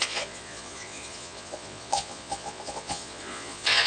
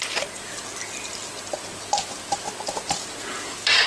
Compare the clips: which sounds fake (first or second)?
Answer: first